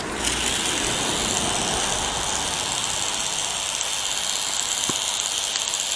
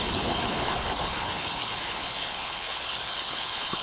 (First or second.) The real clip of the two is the first